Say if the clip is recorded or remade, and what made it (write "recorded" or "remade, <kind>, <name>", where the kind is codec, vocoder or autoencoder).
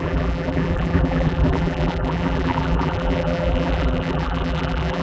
remade, vocoder, BigVGAN v2